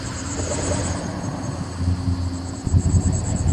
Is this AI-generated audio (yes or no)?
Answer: no